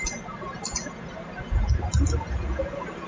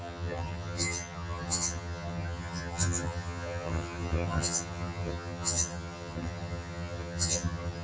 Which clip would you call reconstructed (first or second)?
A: second